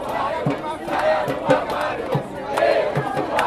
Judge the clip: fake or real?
real